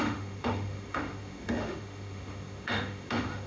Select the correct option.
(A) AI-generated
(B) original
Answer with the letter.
A